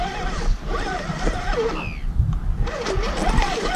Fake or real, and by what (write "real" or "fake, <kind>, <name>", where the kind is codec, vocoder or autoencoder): real